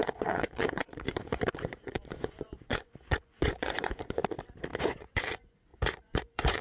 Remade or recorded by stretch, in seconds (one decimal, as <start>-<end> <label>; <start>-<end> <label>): 0.0-4.2 remade; 4.2-4.8 recorded; 4.8-6.6 remade